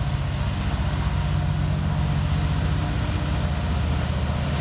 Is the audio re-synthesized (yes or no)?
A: no